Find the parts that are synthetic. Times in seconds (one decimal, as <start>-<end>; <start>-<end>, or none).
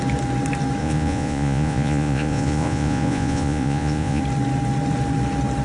0.8-4.2